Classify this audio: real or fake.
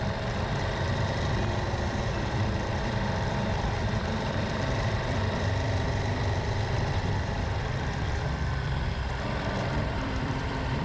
fake